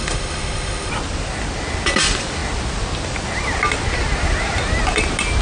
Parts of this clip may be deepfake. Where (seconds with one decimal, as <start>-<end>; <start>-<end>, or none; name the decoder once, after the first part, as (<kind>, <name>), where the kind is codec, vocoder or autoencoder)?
0.0-0.9 (autoencoder, DAC-VAE)